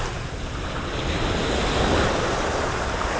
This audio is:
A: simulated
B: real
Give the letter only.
B